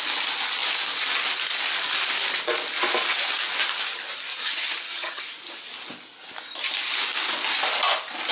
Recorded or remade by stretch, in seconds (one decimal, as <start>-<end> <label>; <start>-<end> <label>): 0.0-4.3 recorded; 4.3-5.2 remade; 5.2-8.3 recorded